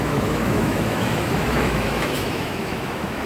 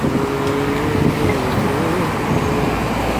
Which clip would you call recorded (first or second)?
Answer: second